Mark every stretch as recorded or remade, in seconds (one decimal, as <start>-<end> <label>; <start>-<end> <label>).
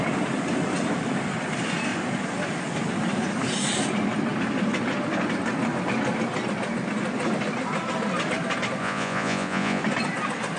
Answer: 0.0-8.8 recorded; 8.8-9.8 remade; 9.8-10.6 recorded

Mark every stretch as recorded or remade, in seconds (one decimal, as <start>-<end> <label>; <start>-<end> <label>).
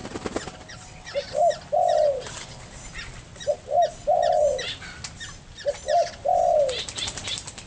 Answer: 0.0-7.7 recorded